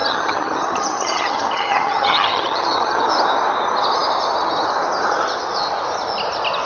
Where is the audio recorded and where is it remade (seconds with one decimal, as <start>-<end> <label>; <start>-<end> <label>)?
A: 0.0-3.1 remade; 3.1-6.7 recorded